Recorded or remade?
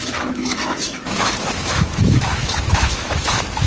remade